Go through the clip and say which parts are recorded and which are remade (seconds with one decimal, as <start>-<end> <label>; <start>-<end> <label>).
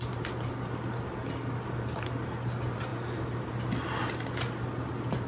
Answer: 0.0-5.3 recorded